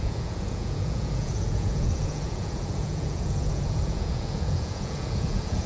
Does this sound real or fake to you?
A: fake